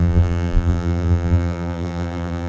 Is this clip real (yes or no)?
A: no